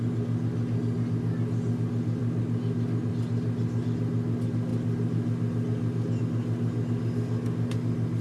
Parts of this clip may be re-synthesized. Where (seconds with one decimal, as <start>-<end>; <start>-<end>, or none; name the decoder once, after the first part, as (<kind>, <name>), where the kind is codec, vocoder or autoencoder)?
none